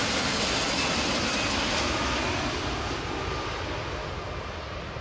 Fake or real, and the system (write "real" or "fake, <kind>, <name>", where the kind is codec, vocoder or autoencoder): real